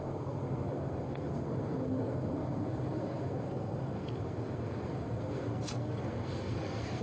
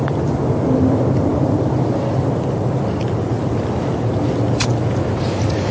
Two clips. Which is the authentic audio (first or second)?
second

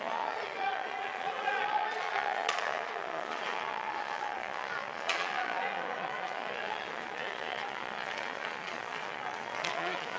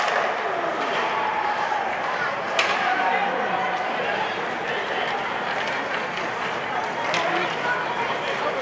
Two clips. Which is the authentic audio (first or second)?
second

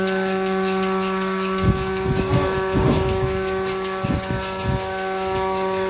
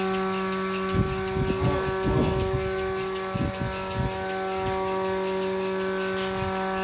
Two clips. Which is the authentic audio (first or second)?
second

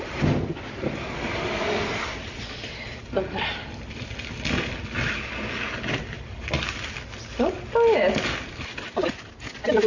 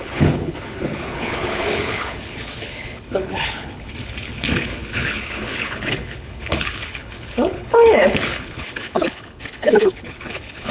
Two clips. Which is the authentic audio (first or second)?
first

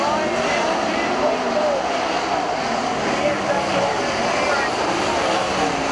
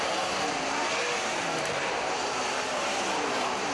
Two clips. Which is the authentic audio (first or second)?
first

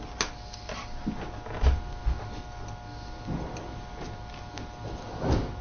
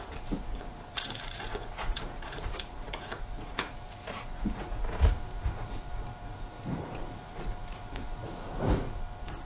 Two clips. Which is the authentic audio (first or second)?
first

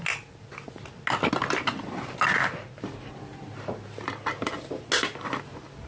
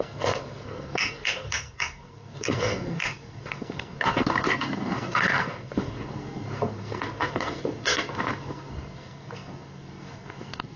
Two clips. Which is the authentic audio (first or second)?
first